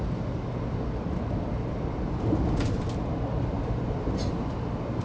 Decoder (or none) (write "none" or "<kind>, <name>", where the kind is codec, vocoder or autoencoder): none